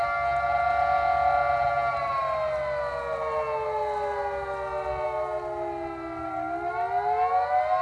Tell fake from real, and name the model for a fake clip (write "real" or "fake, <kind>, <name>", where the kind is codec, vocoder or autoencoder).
real